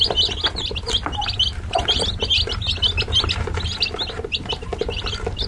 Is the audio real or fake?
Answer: real